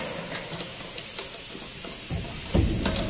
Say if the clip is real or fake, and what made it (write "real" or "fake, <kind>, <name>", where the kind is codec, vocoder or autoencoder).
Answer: real